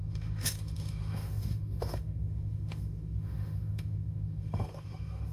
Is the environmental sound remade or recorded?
remade